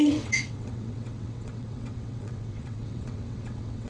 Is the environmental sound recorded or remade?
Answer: remade